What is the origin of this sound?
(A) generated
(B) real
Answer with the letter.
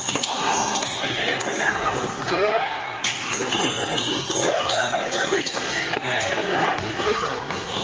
A